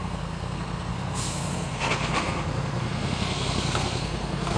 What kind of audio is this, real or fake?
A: fake